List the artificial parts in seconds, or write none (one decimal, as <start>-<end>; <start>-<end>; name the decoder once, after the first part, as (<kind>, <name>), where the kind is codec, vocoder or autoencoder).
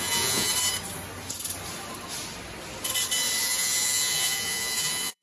0.0-0.5 (vocoder, Vocos); 3.4-5.2